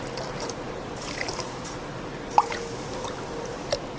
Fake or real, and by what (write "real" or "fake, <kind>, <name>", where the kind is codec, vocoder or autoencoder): real